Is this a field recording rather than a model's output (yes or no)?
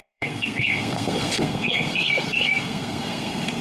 no